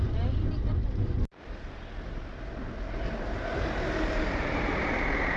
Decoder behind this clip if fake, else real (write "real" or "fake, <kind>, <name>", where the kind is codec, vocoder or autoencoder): fake, vocoder, BigVGAN v2